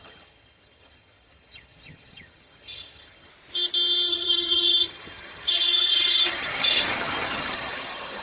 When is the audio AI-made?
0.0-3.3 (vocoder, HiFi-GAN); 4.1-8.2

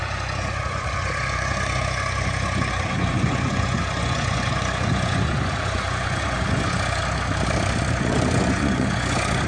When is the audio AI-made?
0.0-7.0 (vocoder, Vocos); 7.9-9.5